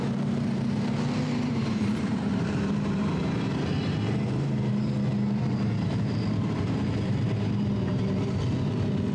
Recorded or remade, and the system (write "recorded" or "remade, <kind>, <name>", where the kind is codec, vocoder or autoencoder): remade, vocoder, BigVGAN v2